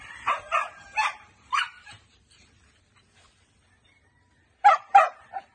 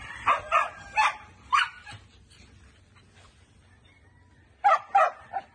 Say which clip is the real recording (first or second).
second